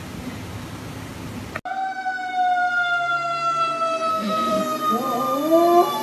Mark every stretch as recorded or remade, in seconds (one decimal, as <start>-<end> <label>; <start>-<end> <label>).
0.0-4.1 recorded; 4.1-4.6 remade; 4.6-6.0 recorded